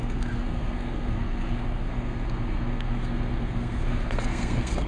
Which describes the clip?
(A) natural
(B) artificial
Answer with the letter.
B